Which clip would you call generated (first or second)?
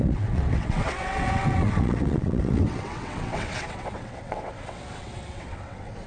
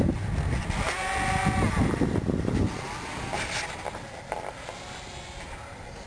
first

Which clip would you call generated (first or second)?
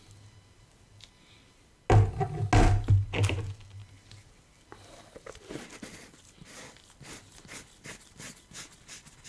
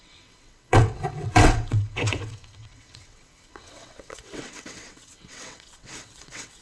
second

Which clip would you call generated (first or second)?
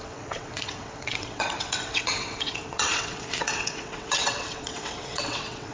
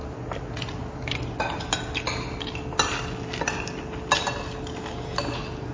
first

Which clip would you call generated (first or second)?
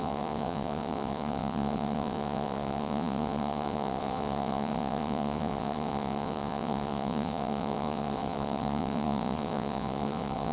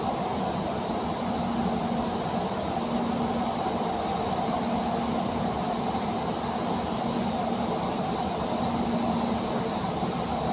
first